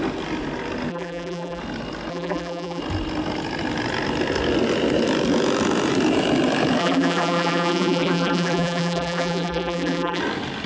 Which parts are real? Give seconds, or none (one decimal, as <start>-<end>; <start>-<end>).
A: 0.0-0.9; 1.6-2.1; 2.8-6.8; 10.2-10.7